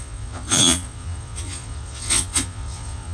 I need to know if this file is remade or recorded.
remade